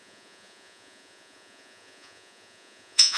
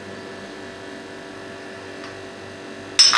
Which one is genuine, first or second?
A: second